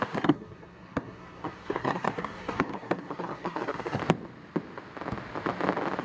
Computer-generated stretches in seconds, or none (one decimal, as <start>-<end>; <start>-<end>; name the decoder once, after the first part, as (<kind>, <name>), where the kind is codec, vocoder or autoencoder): 0.0-4.0 (codec, SNAC)